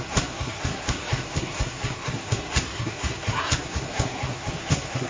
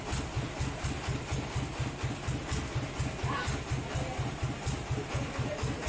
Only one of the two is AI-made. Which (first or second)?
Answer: first